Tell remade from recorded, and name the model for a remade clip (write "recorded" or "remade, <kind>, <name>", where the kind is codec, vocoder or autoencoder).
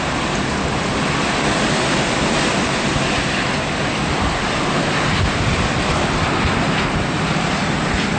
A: recorded